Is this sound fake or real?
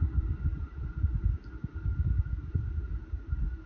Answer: real